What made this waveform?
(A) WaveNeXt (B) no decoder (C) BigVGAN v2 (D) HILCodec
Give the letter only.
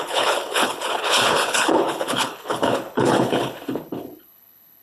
D